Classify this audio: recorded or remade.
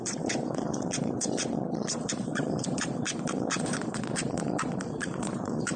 remade